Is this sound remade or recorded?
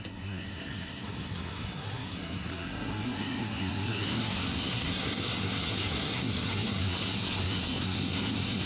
remade